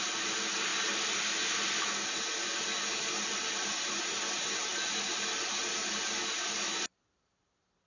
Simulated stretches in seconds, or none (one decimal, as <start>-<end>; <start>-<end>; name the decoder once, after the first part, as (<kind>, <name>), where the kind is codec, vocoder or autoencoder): none